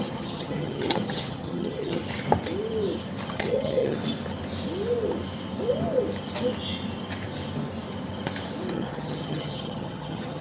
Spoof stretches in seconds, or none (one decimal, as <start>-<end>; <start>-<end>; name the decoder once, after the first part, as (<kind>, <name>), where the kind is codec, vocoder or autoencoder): 0.0-2.0 (vocoder, HiFi-GAN); 3.3-4.0; 8.7-10.4